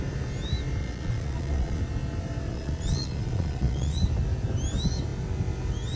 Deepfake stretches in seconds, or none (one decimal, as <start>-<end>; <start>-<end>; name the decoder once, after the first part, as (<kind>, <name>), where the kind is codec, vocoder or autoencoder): 0.8-1.8 (vocoder, Vocos); 2.5-4.0